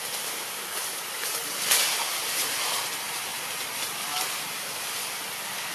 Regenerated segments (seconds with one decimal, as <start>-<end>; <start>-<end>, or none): 1.4-2.8; 3.3-5.2